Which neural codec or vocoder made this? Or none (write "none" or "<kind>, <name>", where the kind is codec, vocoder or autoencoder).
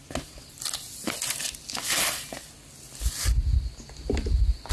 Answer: none